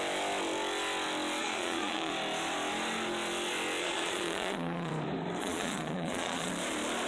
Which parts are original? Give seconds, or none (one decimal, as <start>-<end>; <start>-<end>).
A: 0.0-1.4; 2.1-3.8; 4.9-5.4; 6.5-7.1